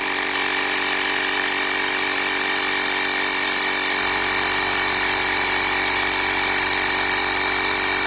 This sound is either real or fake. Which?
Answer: real